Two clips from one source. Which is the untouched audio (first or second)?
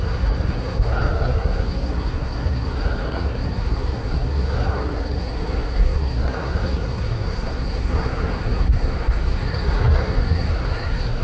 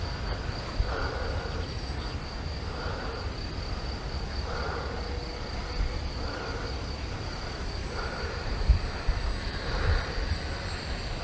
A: second